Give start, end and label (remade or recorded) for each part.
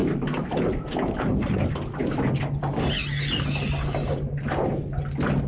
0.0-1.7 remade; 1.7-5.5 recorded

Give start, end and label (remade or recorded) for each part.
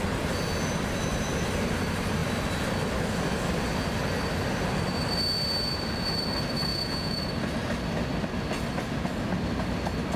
0.0-6.7 recorded; 6.7-7.2 remade; 7.2-10.2 recorded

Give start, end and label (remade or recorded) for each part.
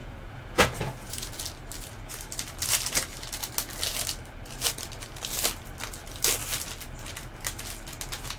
0.0-1.4 remade; 1.4-8.4 recorded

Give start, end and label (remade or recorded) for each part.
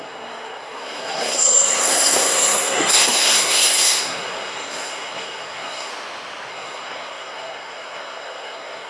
0.0-5.9 remade; 5.9-6.5 recorded; 6.5-8.9 remade